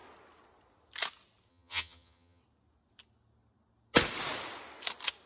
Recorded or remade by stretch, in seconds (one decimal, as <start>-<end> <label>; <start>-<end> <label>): 0.0-1.5 recorded; 1.5-2.4 remade; 2.4-5.3 recorded